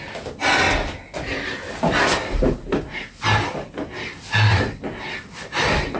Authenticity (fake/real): real